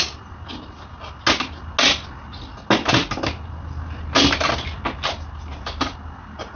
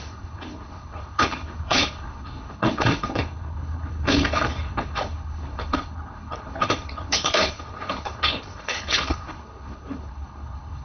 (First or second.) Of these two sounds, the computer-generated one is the second